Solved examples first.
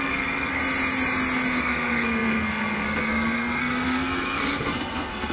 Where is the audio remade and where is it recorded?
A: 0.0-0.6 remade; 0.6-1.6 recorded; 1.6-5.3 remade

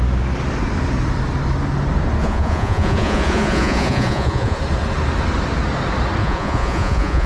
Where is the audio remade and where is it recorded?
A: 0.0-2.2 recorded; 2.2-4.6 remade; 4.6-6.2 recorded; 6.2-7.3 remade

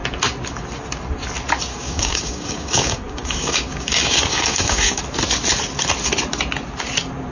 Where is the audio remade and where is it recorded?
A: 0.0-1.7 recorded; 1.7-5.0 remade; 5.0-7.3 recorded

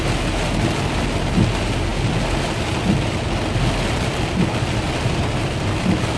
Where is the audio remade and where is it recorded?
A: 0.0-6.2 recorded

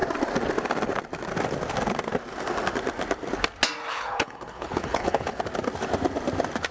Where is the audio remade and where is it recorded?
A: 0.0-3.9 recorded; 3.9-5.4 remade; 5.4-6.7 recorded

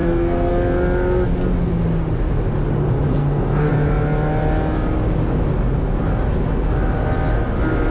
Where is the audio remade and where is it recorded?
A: 0.0-0.5 remade; 0.5-3.1 recorded; 3.1-3.7 remade; 3.7-7.9 recorded